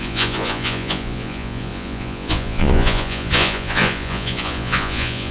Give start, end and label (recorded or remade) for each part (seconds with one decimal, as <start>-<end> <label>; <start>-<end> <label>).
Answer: 0.0-5.3 remade